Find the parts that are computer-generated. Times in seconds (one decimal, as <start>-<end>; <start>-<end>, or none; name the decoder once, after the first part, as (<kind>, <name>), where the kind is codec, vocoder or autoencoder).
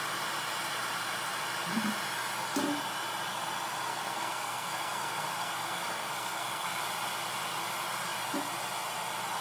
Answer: 3.9-6.8 (codec, SNAC)